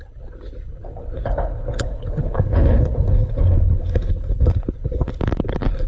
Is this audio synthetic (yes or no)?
yes